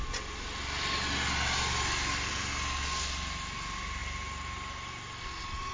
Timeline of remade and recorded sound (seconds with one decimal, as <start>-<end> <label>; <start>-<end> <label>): 0.0-5.7 recorded